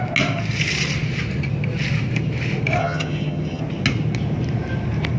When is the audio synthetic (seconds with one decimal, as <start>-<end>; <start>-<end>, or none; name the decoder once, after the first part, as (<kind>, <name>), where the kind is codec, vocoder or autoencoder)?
2.8-3.6 (vocoder, HiFi-GAN)

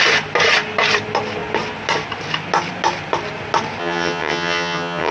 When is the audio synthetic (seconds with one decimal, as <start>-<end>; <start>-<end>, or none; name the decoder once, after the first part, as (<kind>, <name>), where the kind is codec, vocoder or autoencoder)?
3.8-5.1 (vocoder, HiFi-GAN)